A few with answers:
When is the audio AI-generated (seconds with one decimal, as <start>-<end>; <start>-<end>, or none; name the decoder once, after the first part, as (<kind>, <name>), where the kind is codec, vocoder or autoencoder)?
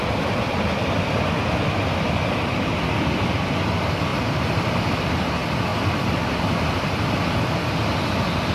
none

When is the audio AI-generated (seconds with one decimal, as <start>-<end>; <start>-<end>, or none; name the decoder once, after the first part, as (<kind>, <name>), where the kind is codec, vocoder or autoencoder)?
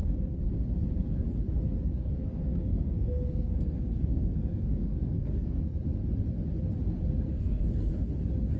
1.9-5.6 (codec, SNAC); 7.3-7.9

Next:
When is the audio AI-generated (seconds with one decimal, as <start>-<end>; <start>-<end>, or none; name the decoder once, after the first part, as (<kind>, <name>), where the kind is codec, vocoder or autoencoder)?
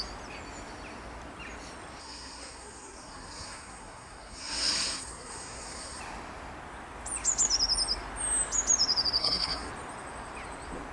2.0-6.0 (codec, SNAC); 9.2-9.7